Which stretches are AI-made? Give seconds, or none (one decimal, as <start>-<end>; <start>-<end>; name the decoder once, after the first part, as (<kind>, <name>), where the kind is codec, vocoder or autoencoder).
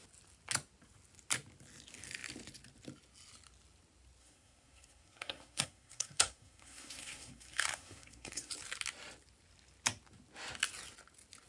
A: 4.2-8.5 (codec, SNAC)